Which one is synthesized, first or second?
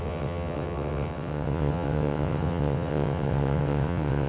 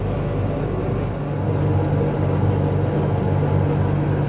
first